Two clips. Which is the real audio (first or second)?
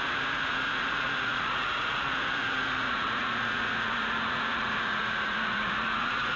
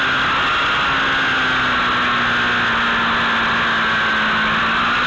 second